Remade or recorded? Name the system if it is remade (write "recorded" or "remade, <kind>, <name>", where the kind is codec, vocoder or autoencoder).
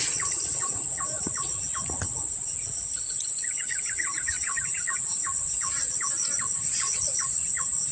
remade, vocoder, Vocos